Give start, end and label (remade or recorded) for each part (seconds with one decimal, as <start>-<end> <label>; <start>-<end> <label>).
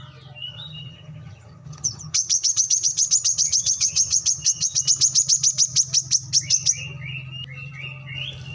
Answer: 0.0-0.5 recorded; 0.5-4.8 remade; 4.8-8.5 recorded